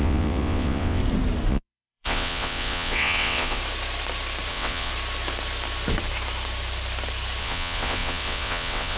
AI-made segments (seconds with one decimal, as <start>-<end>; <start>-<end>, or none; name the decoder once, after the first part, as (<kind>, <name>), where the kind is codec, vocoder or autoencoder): 0.0-1.0 (vocoder, WaveNeXt); 1.5-3.6; 4.5-4.9; 7.4-9.0